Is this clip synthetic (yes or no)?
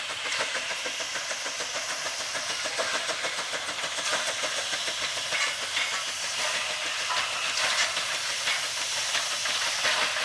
no